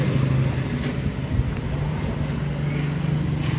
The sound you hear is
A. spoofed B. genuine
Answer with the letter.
B